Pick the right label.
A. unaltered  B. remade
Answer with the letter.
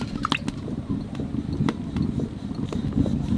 A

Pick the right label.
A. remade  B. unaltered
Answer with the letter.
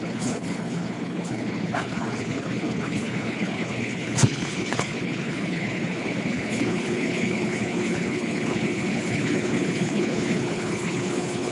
A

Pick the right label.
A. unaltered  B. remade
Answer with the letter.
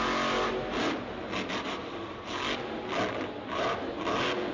A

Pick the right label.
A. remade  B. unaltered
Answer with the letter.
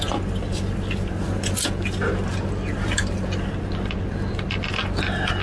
B